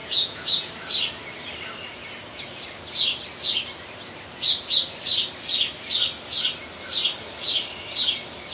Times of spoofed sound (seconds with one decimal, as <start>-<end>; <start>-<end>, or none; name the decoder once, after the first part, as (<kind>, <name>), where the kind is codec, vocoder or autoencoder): 0.0-0.7 (vocoder, Vocos)

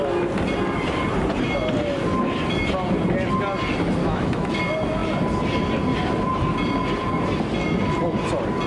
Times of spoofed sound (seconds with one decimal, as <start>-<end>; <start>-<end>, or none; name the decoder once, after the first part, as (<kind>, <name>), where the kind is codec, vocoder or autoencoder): 4.0-4.5 (autoencoder, DAC-VAE)